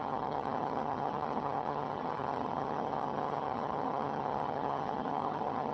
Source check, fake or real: fake